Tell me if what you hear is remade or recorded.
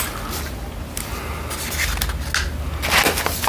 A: recorded